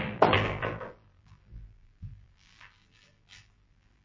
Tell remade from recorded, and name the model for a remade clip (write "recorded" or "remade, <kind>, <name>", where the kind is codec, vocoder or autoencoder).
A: remade, vocoder, BigVGAN v2